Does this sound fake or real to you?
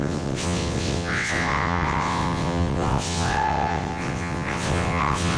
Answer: fake